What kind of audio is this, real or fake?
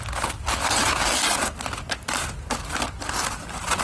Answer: real